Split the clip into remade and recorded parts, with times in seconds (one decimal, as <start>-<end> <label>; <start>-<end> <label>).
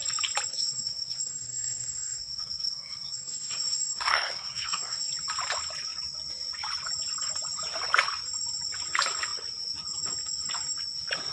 0.0-0.5 recorded; 0.5-5.1 remade; 5.1-11.3 recorded